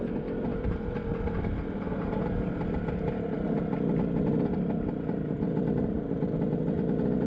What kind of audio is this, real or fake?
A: real